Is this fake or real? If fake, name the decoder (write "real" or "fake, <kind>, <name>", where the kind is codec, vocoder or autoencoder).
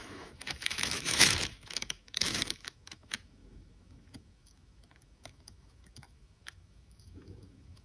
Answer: fake, autoencoder, DAC-VAE